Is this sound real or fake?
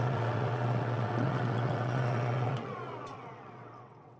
fake